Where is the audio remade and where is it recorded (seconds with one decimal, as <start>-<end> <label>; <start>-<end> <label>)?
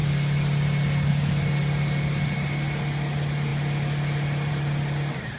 0.0-5.4 recorded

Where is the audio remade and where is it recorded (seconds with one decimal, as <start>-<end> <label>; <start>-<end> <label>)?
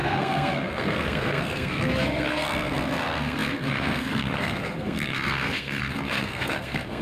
0.0-7.0 remade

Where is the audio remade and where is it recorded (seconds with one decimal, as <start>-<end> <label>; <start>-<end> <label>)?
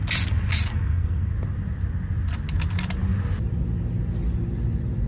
0.0-0.7 recorded; 0.7-1.3 remade; 1.3-5.1 recorded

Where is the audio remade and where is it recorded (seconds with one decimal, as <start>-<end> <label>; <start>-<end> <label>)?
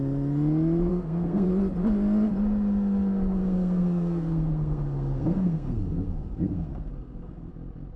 0.0-0.9 recorded; 0.9-1.5 remade; 1.5-3.4 recorded; 3.4-7.5 remade; 7.5-8.0 recorded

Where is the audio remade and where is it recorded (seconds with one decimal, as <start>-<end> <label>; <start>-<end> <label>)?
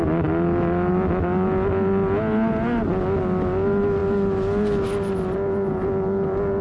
0.0-6.6 recorded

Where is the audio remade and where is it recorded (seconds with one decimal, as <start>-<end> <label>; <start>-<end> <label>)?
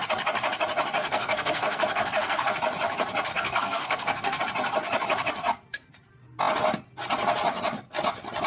0.0-1.0 recorded; 1.0-2.5 remade; 2.5-3.3 recorded; 3.3-4.4 remade; 4.4-8.5 recorded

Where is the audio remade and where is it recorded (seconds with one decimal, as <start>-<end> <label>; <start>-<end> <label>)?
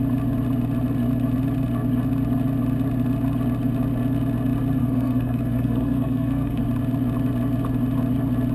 0.0-4.8 recorded; 4.8-6.6 remade; 6.6-8.5 recorded